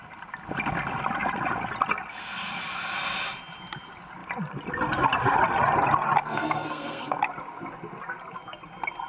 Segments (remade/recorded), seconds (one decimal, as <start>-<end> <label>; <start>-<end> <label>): 0.0-6.2 recorded; 6.2-7.2 remade; 7.2-9.1 recorded